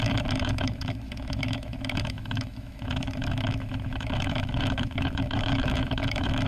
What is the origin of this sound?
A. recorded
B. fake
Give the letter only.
B